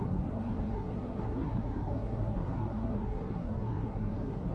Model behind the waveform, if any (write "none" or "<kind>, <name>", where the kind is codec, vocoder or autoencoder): codec, SNAC